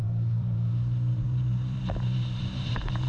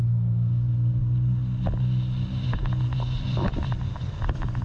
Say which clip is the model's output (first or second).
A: first